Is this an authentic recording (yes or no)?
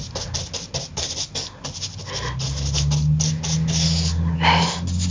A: yes